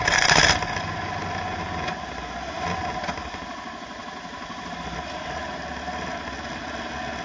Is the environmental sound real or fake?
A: real